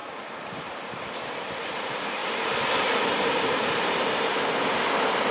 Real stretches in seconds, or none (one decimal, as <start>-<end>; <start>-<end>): 1.2-2.2; 4.4-5.3